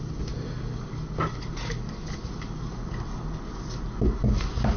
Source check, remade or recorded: recorded